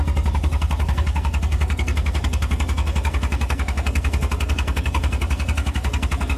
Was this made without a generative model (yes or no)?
no